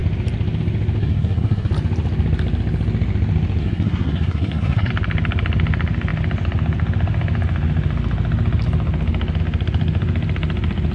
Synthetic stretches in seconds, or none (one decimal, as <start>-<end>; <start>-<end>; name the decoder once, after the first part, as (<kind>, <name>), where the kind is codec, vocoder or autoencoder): 1.0-1.7 (codec, SNAC); 3.6-4.9

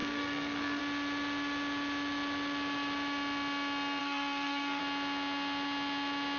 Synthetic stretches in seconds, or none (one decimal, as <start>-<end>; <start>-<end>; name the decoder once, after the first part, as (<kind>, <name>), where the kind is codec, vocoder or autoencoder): 0.0-0.8 (codec, SNAC); 4.0-4.8

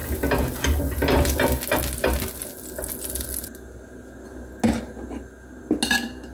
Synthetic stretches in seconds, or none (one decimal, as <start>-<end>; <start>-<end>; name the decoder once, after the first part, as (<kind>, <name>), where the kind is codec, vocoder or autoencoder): none

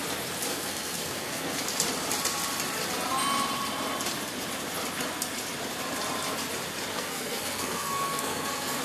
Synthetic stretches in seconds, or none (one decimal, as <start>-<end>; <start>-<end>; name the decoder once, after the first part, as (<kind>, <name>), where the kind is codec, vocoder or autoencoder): 0.5-1.6 (codec, SNAC); 6.9-8.8